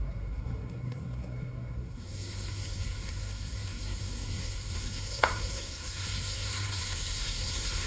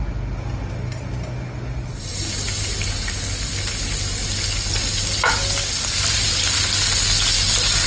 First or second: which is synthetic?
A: first